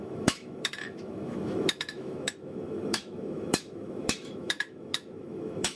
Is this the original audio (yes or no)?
no